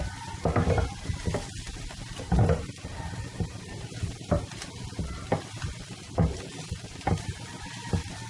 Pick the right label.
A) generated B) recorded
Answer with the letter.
B